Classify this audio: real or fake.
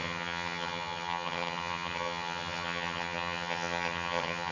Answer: fake